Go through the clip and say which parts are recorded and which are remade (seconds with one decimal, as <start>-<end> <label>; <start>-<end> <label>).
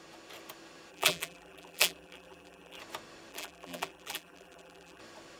0.0-0.9 recorded; 0.9-2.8 remade; 2.8-3.3 recorded; 3.3-5.0 remade; 5.0-5.4 recorded